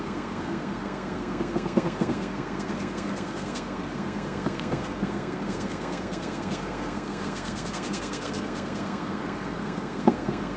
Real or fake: fake